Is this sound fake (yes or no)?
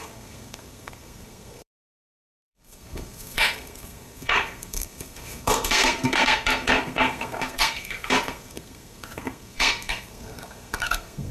yes